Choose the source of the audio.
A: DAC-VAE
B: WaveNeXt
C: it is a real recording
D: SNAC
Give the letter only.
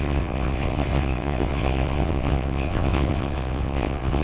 B